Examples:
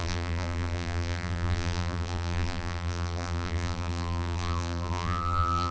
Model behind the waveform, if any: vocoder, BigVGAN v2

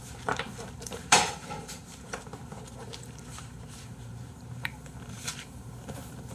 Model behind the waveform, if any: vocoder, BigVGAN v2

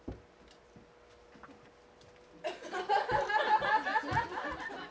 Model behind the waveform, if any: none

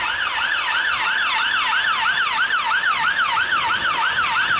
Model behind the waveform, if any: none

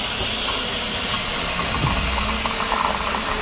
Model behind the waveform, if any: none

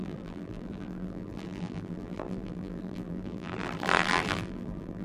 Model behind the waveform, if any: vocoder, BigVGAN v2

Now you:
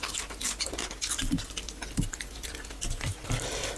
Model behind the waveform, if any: none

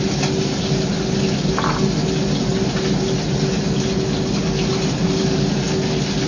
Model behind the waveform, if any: none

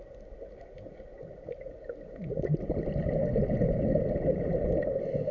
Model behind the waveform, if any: none